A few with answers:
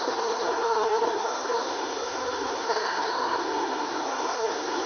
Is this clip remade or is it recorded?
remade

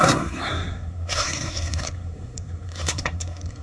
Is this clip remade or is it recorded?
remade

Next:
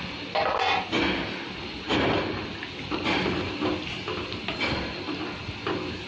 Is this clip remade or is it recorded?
recorded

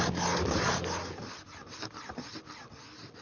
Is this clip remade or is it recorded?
recorded